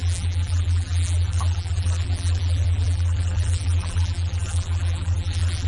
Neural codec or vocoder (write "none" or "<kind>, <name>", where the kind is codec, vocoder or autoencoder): vocoder, BigVGAN v2